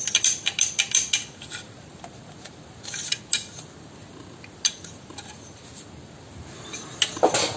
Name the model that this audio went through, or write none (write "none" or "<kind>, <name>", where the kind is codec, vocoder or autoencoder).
none